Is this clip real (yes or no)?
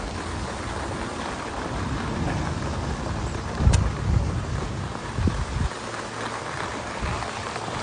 yes